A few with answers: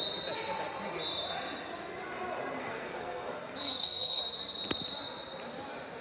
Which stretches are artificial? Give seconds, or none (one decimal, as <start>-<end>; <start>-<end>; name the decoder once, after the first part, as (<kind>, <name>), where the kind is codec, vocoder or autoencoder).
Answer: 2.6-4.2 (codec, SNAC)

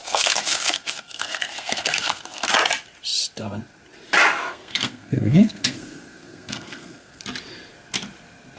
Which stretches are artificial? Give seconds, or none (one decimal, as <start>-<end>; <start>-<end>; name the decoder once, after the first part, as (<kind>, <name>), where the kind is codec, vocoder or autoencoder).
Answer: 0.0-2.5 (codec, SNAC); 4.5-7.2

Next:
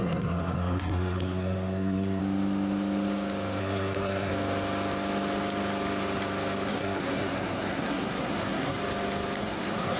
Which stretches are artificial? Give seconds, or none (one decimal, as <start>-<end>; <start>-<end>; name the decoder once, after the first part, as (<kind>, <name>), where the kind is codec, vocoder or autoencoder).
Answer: 0.0-2.2 (codec, SNAC); 3.6-4.3; 6.7-8.8; 9.4-10.0

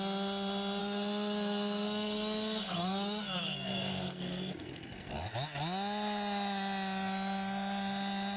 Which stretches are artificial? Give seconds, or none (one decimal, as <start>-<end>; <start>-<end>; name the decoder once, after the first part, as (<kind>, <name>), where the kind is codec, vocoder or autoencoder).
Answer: 0.8-5.3 (codec, SNAC)

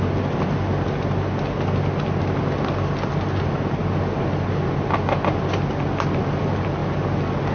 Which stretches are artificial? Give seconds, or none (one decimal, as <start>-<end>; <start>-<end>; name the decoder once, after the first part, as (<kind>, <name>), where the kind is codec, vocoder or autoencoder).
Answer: none